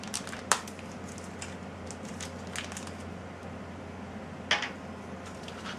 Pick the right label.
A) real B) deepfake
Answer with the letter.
A